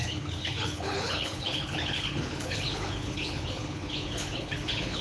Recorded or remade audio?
remade